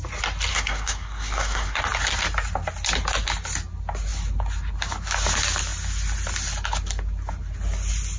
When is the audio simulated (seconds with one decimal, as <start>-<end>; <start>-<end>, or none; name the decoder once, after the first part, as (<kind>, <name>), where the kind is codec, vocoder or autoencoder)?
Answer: 0.5-1.8 (codec, SNAC)